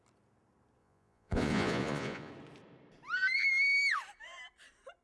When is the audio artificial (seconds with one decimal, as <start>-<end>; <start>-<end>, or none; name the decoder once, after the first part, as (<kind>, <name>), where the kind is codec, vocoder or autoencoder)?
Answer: 0.8-2.3 (vocoder, Vocos)